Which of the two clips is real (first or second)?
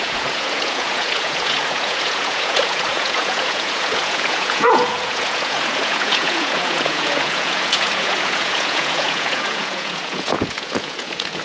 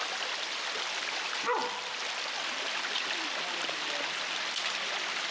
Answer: second